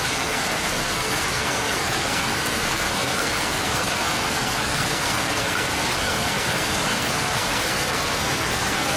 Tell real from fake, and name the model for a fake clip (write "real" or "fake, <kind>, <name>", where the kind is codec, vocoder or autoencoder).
fake, codec, SNAC